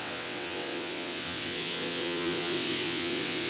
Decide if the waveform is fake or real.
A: fake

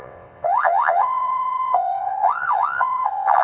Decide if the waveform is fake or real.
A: fake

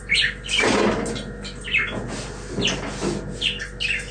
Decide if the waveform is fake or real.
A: real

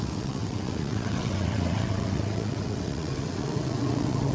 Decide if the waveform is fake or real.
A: fake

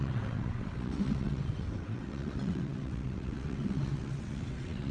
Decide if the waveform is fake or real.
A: fake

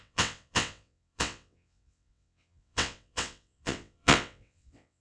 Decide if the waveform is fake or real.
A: fake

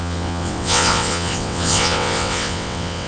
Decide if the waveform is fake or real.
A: fake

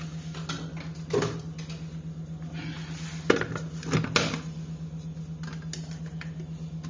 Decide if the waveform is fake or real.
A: real